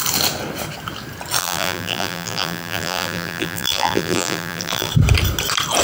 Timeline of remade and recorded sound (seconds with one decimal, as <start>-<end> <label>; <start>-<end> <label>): 0.0-1.4 recorded; 1.4-4.9 remade; 4.9-5.8 recorded